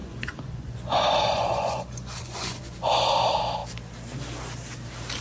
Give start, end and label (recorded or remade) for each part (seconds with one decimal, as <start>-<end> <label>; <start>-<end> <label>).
0.0-3.1 remade; 3.1-5.2 recorded

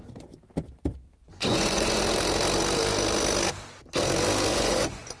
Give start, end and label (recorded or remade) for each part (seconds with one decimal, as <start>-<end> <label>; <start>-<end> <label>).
0.0-1.2 recorded; 1.2-2.0 remade; 2.0-4.5 recorded; 4.5-5.2 remade

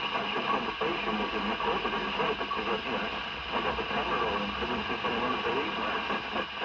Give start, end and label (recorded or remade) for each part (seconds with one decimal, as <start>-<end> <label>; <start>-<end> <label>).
0.0-6.6 recorded

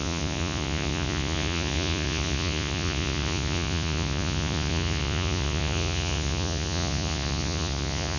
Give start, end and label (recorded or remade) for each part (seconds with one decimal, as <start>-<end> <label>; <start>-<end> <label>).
0.0-8.2 remade

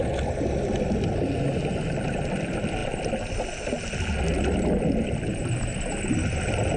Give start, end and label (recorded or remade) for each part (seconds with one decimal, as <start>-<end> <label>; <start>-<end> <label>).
0.0-6.8 recorded

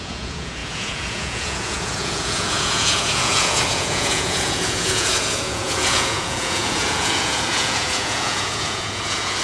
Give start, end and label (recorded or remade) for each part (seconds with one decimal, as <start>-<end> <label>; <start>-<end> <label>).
0.0-9.4 remade